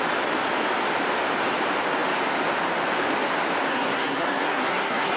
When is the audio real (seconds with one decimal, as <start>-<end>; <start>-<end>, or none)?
0.0-3.7